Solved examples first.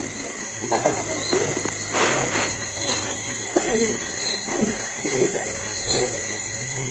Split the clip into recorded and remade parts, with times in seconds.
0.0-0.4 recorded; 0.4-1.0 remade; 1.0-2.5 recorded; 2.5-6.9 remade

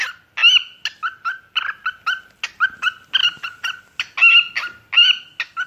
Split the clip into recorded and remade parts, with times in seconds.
0.0-5.7 recorded

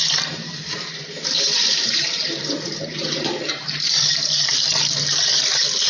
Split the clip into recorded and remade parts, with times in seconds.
0.0-4.5 remade; 4.5-5.2 recorded; 5.2-5.9 remade

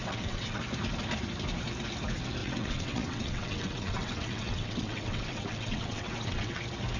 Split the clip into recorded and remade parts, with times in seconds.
0.0-0.6 remade; 0.6-2.4 recorded; 2.4-6.6 remade; 6.6-7.0 recorded